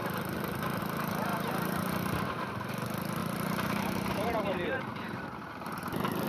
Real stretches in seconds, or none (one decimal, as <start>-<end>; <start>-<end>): 0.0-1.3; 2.7-3.2; 5.5-6.3